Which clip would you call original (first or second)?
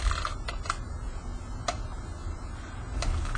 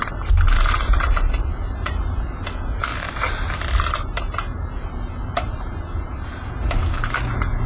first